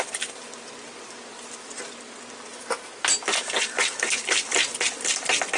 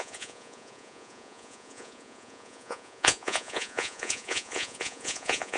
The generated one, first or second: second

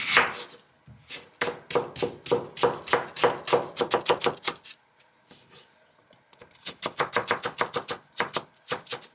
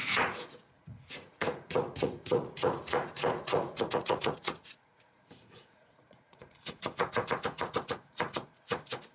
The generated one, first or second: second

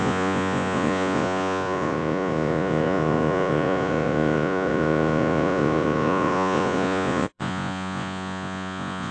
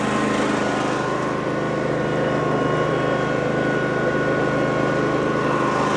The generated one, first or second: first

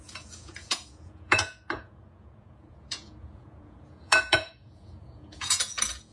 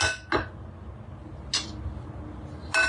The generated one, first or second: first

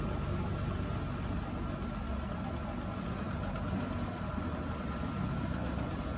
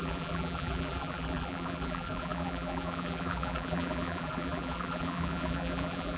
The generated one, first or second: second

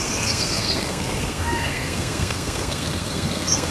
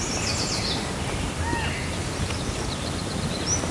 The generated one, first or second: first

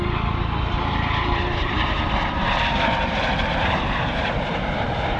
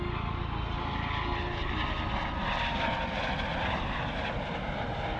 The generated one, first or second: first